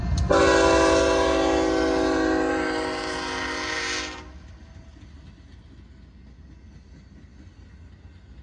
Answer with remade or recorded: recorded